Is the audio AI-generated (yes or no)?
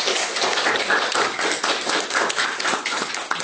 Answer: no